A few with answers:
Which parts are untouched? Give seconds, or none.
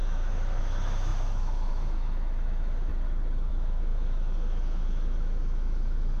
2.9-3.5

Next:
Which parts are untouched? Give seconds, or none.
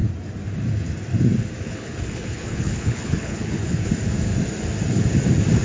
0.0-1.7; 3.9-5.6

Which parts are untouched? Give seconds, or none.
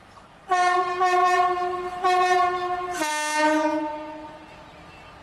3.1-5.2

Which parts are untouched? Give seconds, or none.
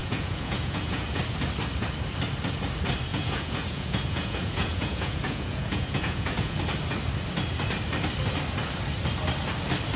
1.2-3.1; 6.6-10.0